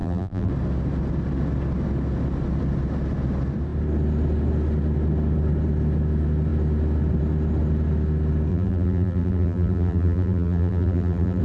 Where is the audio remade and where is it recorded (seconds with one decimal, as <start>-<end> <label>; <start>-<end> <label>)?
0.0-0.5 remade; 0.5-8.5 recorded; 8.5-11.4 remade